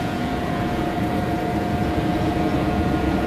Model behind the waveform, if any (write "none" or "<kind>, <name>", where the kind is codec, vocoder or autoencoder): vocoder, Vocos